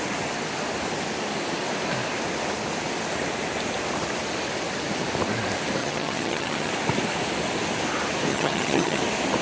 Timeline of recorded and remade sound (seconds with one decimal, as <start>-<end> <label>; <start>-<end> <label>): 0.0-5.8 recorded; 5.8-6.7 remade; 6.7-8.3 recorded; 8.3-9.0 remade; 9.0-9.4 recorded